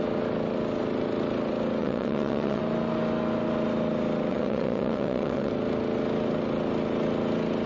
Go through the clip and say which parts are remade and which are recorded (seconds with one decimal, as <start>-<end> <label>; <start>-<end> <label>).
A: 0.0-1.8 recorded; 1.8-2.6 remade; 2.6-4.3 recorded; 4.3-5.5 remade; 5.5-7.7 recorded